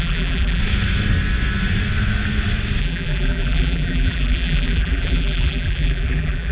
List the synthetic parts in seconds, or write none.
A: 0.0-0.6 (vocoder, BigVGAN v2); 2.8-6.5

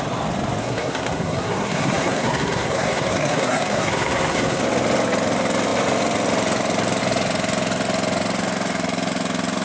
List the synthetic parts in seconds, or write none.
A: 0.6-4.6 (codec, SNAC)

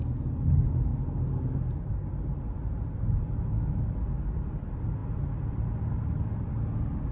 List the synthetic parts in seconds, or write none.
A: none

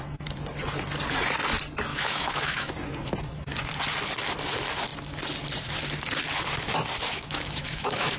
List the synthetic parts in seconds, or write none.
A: 1.9-2.7 (autoencoder, DAC-VAE); 7.1-8.2

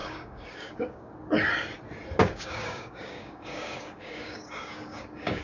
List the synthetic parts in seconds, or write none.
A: 0.0-1.1 (codec, DAC); 2.2-5.4